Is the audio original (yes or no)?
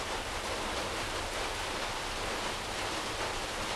yes